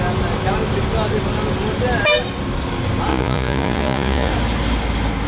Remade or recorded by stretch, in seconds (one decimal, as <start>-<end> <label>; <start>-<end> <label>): 0.0-3.1 recorded; 3.1-4.3 remade; 4.3-5.3 recorded